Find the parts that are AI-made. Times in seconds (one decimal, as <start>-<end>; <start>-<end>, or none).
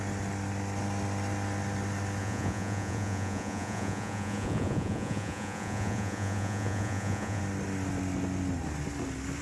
2.2-7.4